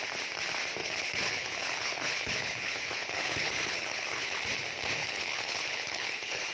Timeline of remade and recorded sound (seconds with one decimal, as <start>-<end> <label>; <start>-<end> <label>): 0.0-0.8 recorded; 0.8-4.4 remade; 4.4-5.0 recorded; 5.0-6.5 remade